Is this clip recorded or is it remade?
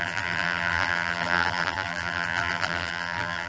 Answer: remade